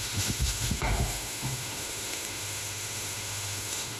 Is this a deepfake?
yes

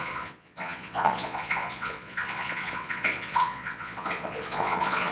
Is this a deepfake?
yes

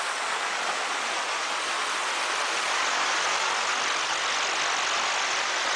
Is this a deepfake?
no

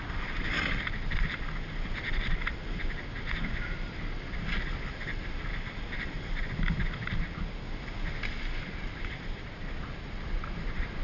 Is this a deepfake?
no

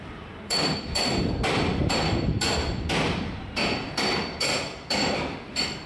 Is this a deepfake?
yes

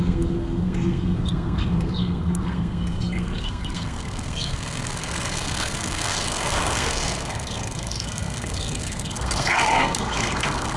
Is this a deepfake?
yes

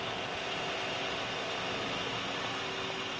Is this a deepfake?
no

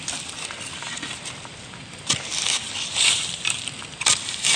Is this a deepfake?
no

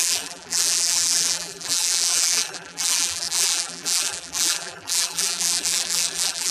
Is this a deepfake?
yes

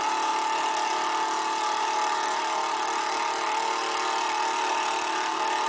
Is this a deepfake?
no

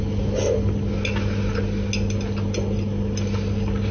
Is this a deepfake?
no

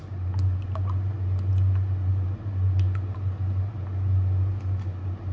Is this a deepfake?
no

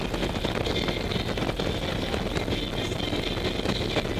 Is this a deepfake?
no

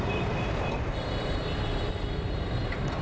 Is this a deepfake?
yes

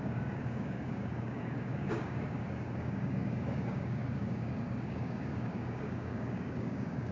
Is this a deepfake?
yes